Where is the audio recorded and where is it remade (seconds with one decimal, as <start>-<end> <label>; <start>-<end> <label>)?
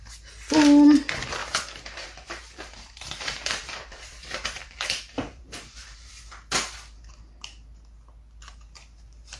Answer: 0.0-1.4 recorded; 1.4-6.1 remade; 6.1-9.4 recorded